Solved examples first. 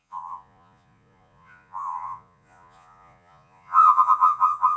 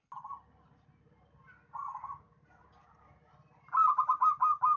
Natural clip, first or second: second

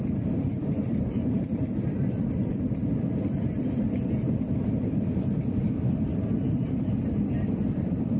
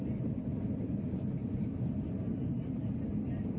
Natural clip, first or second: second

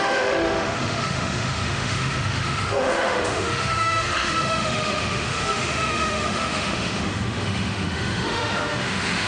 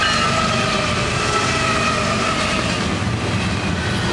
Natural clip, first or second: second